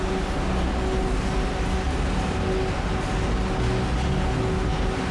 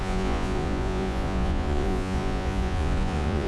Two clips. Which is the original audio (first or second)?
first